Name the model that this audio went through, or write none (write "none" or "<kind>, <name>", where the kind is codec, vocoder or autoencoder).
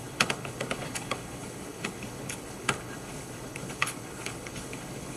codec, HILCodec